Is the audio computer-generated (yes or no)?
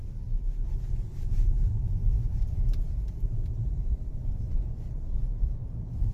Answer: yes